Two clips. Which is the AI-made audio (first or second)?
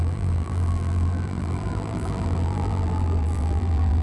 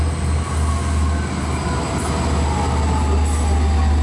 first